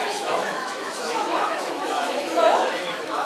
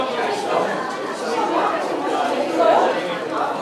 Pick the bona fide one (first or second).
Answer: second